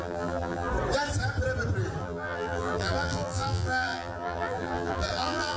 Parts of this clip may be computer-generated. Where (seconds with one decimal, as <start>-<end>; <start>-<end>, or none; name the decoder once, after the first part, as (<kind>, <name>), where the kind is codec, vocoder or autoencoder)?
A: 0.0-0.7 (vocoder, BigVGAN v2); 2.0-5.6